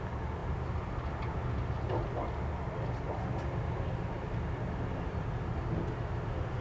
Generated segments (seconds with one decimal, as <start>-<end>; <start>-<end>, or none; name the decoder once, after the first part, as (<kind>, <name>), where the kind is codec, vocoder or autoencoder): none